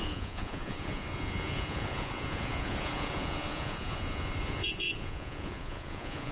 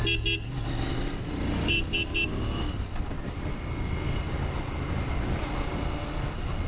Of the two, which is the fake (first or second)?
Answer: first